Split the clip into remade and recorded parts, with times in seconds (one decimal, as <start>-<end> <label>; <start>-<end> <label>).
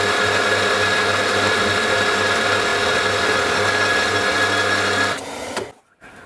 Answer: 0.0-6.3 recorded